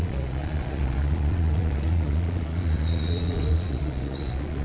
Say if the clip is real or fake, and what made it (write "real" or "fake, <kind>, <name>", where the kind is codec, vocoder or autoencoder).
fake, vocoder, Vocos